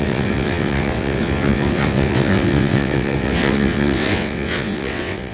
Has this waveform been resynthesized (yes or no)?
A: yes